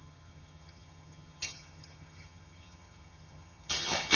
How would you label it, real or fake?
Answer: fake